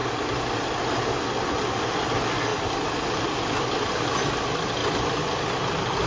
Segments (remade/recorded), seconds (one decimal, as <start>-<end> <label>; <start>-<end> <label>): 0.0-6.1 recorded